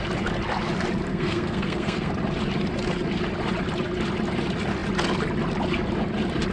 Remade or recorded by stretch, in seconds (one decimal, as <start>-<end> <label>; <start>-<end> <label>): 0.0-1.1 recorded; 1.1-2.1 remade; 2.1-6.5 recorded